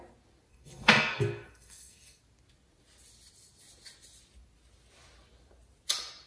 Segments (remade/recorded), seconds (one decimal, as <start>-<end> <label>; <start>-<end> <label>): 0.0-0.5 recorded; 0.5-2.2 remade; 2.2-6.3 recorded